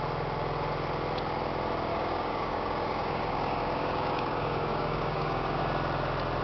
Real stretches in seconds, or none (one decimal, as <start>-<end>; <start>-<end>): 0.0-1.9; 5.6-6.4